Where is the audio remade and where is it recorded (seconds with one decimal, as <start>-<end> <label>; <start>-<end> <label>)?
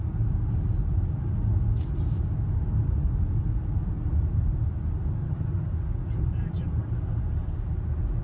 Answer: 0.0-5.2 recorded; 5.2-5.7 remade; 5.7-8.2 recorded